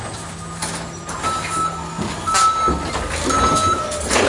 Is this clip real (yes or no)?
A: yes